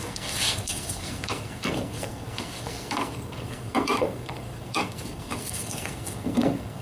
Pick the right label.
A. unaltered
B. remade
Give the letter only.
B